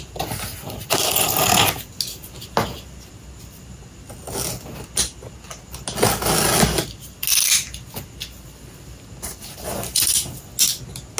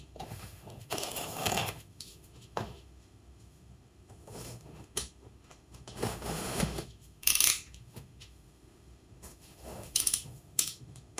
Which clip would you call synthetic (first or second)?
second